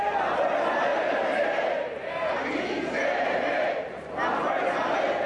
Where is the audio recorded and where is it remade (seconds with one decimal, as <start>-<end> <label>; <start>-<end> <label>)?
0.0-0.9 recorded; 0.9-4.1 remade; 4.1-5.3 recorded

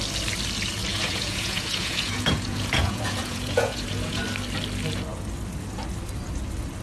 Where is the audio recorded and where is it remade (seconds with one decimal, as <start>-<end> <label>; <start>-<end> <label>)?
0.0-0.9 recorded; 0.9-4.2 remade; 4.2-6.8 recorded

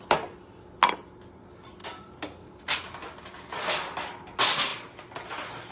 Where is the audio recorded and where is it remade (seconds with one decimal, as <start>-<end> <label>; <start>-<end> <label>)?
0.0-5.7 recorded

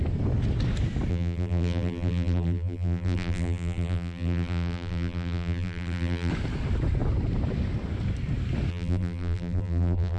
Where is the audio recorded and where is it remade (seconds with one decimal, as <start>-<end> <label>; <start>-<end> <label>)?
0.0-1.1 recorded; 1.1-6.3 remade; 6.3-8.7 recorded; 8.7-10.2 remade